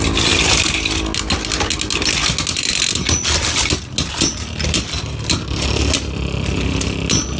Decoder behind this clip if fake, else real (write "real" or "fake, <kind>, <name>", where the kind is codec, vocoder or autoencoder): real